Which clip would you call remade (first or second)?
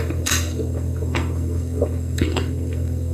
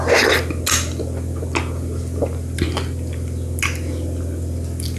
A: first